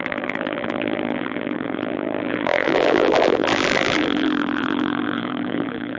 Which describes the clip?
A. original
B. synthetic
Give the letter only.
B